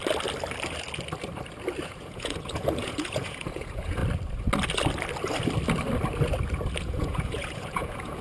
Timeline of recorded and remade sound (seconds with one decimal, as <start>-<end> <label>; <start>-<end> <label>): 0.0-1.8 recorded; 1.8-4.0 remade; 4.0-6.8 recorded; 6.8-8.2 remade